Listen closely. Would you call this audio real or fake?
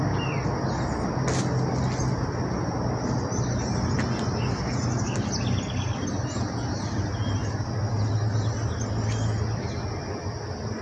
real